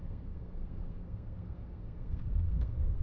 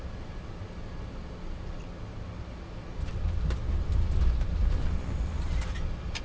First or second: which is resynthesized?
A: first